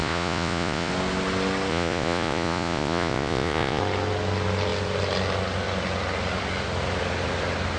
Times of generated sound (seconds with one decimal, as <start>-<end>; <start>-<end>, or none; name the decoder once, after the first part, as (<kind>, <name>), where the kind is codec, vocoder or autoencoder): 0.0-0.9 (vocoder, Vocos); 1.7-3.8